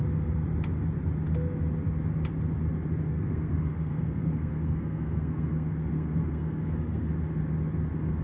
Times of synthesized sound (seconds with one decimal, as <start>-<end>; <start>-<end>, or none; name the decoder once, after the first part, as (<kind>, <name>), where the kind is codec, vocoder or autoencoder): 3.1-7.1 (codec, SNAC)